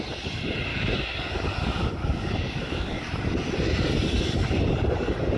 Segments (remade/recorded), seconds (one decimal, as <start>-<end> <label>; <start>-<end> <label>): 0.0-0.7 recorded; 0.7-3.1 remade; 3.1-5.4 recorded